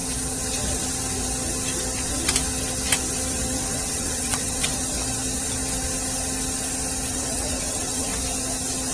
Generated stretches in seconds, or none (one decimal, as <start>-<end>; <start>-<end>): 3.7-4.7; 7.1-8.1